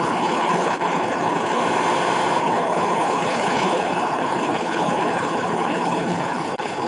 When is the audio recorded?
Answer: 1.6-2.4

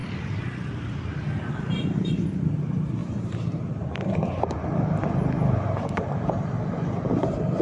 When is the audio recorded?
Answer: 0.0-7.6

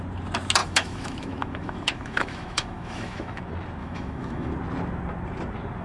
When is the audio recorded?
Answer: 0.0-0.6; 3.4-3.8; 4.5-5.8